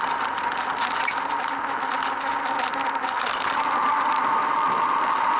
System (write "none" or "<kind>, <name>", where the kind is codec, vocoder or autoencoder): none